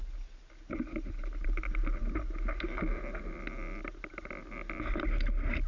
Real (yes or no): yes